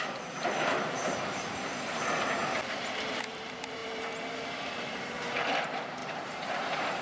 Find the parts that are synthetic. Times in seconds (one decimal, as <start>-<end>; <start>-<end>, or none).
0.0-2.4; 3.1-7.0